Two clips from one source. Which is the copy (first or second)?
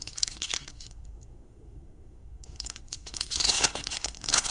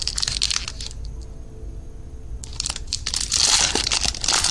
first